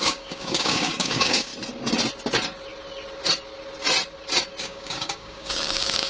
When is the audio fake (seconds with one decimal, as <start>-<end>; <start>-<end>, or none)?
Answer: 0.0-1.5; 4.6-6.1